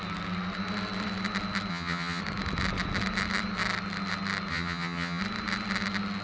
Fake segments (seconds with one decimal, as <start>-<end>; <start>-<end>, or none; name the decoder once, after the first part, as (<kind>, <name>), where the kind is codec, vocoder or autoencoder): 1.7-2.2 (vocoder, HiFi-GAN); 4.5-5.2